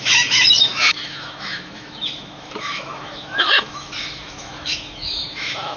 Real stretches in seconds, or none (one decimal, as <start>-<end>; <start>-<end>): none